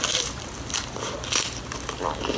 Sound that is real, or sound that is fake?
real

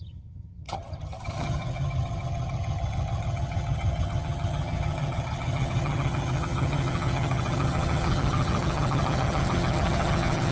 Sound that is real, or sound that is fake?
fake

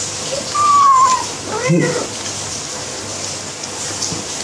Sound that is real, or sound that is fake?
real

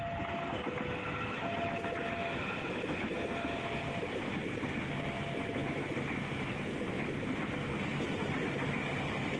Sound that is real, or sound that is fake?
real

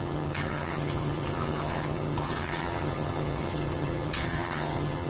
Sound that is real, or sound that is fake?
fake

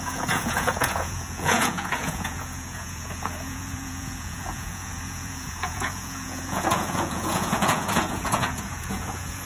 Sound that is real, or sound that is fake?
fake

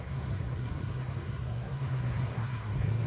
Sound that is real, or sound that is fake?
fake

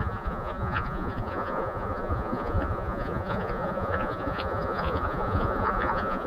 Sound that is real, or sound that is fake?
fake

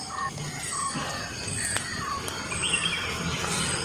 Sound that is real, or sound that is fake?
real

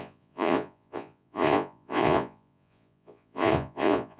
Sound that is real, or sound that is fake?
fake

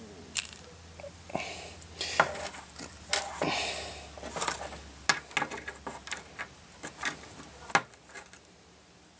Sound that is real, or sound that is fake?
real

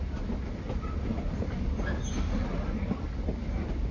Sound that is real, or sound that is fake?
real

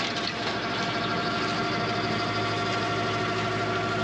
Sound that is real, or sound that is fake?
real